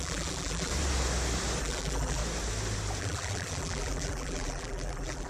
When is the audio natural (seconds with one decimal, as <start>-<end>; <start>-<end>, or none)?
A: 0.7-1.6; 2.2-3.0